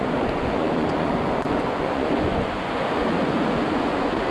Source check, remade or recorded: remade